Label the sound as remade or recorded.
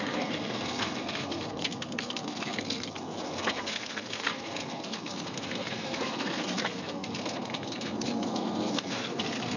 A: remade